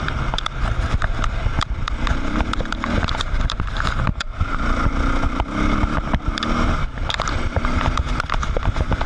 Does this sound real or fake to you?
fake